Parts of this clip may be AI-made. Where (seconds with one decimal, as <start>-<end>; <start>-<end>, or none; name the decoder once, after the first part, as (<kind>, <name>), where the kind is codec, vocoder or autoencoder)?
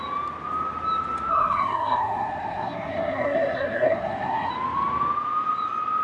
1.3-4.5 (codec, SNAC)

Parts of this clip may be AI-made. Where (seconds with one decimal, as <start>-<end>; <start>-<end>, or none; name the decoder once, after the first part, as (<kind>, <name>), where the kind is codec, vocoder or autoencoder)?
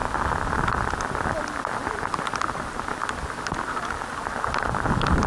none